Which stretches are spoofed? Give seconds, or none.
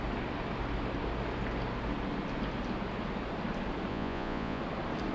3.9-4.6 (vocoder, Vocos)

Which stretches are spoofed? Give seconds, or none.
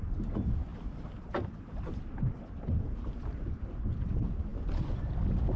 0.7-3.8 (vocoder, BigVGAN v2); 4.5-5.1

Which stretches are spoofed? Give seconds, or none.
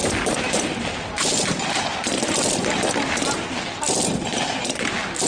none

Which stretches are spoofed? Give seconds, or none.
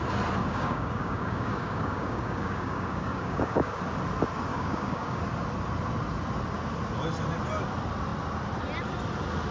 0.4-3.8 (codec, DAC); 4.5-5.2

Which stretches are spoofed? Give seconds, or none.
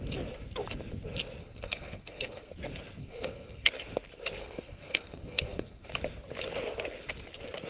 1.4-2.5 (codec, SNAC); 3.0-3.7; 4.4-5.9